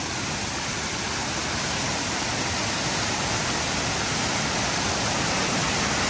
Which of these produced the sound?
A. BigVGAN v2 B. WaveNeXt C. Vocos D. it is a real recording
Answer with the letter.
D